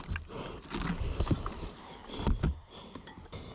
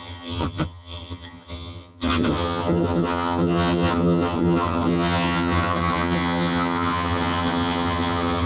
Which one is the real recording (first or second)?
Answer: first